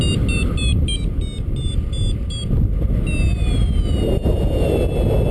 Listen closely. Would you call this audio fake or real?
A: real